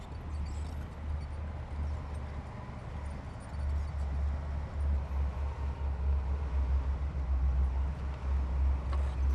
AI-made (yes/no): no